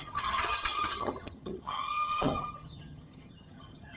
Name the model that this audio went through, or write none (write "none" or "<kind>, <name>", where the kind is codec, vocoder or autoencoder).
vocoder, HiFi-GAN